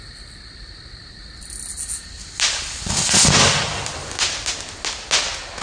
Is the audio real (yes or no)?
yes